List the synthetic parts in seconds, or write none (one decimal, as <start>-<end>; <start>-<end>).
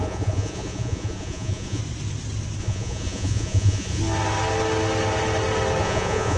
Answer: 0.0-1.8; 2.6-4.0; 5.8-6.4